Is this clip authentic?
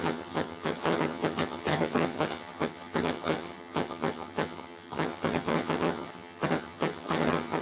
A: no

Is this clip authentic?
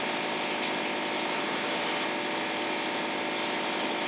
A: yes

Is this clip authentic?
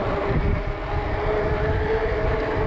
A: yes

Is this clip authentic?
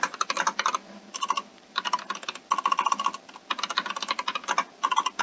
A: yes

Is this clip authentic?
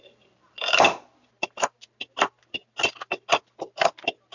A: yes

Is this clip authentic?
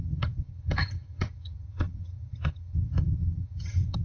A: no